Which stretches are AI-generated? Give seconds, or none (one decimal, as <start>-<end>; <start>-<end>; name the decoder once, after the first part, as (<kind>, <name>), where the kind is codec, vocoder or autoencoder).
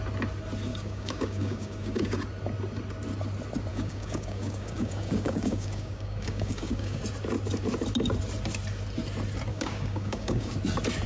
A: 0.7-2.2 (codec, DAC); 3.7-7.0; 9.5-10.5